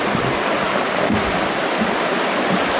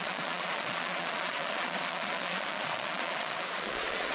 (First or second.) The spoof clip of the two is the second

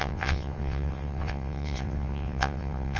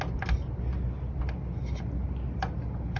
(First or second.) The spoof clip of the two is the first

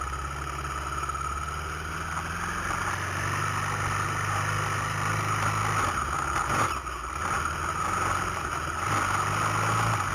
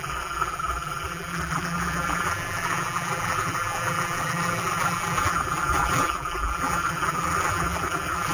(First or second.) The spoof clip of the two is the second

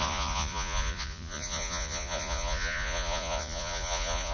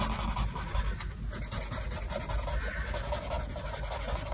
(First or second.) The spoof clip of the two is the first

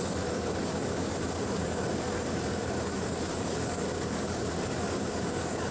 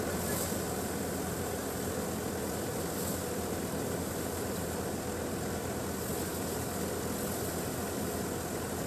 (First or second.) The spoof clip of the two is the first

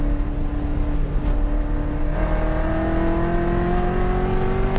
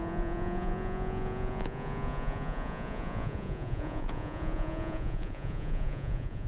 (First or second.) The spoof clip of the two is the second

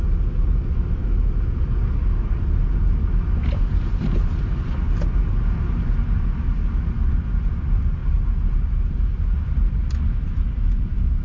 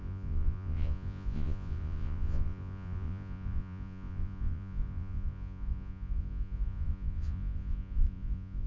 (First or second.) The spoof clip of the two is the second